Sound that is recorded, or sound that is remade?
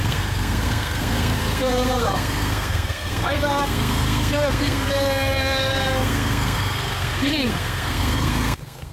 remade